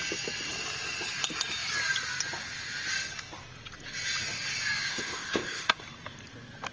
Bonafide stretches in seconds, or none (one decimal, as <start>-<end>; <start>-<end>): 0.0-4.9; 5.8-6.7